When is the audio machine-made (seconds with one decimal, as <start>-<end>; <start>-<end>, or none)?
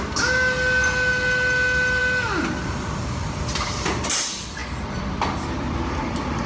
none